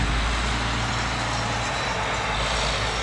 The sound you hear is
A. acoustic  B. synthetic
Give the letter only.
A